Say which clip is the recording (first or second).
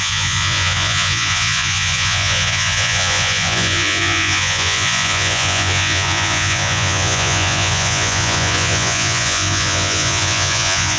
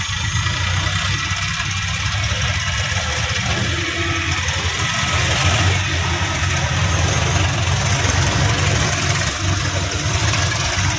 second